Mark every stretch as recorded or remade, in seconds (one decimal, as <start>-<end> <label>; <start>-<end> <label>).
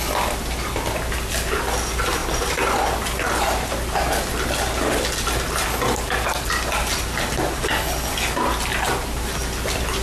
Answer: 0.0-10.0 recorded